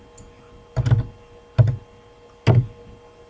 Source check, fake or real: real